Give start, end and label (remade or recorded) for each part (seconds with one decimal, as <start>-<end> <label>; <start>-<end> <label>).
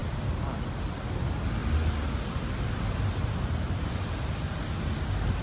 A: 0.0-5.4 recorded